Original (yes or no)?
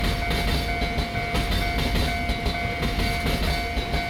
yes